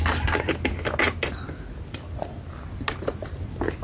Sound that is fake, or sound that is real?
real